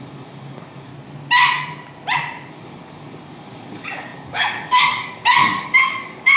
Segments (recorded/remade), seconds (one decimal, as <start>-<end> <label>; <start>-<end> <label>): 0.0-0.9 remade; 0.9-2.5 recorded; 2.5-6.4 remade